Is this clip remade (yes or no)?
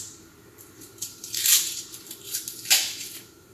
yes